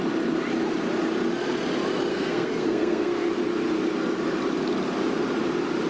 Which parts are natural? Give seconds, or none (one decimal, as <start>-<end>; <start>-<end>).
0.0-2.1; 3.3-5.9